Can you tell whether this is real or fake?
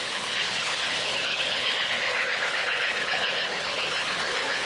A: fake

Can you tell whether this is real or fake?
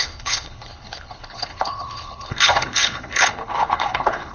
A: fake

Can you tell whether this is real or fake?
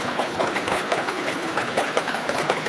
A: fake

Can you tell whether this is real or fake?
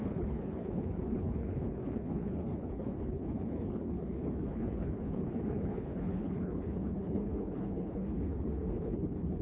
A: fake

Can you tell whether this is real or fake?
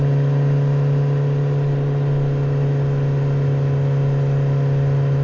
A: real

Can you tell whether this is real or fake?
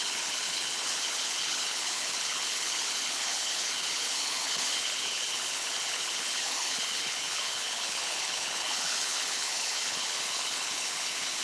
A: fake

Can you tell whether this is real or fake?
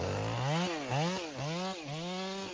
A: real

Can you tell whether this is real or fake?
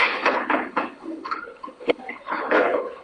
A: fake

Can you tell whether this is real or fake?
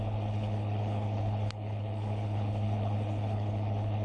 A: fake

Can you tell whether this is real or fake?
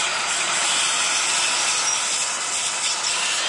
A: real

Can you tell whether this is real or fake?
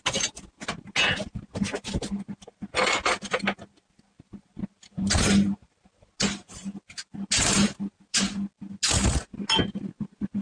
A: real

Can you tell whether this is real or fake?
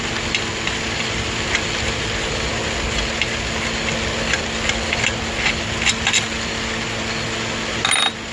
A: real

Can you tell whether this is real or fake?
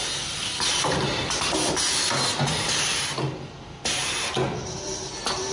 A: real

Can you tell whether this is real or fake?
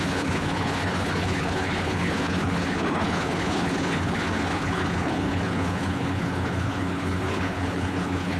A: fake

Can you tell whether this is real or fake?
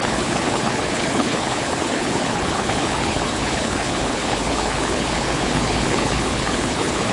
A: fake